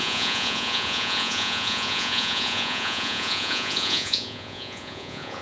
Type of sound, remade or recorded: remade